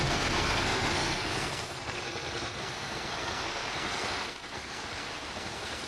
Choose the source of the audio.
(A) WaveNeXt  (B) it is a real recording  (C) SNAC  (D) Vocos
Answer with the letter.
C